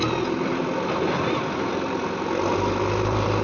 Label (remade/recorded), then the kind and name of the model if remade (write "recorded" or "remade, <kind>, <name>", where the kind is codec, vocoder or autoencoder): remade, vocoder, BigVGAN v2